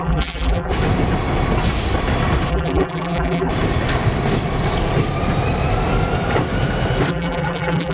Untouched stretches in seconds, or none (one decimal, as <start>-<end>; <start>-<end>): 0.7-2.5; 3.5-7.1